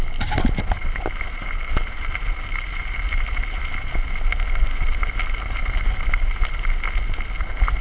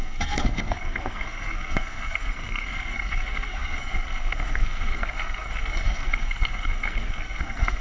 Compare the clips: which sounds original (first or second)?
first